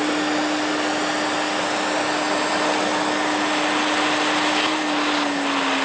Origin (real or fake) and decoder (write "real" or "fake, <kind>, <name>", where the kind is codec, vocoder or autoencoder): real